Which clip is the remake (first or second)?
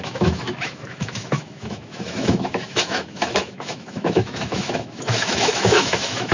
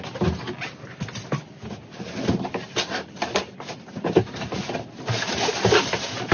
first